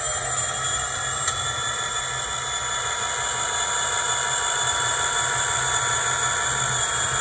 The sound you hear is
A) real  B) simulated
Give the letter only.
A